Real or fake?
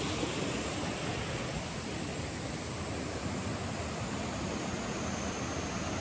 real